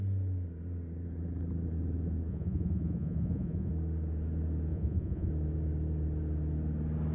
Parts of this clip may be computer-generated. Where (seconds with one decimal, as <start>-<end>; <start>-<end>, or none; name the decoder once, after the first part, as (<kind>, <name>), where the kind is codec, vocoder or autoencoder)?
2.3-3.7 (vocoder, Vocos); 4.7-5.3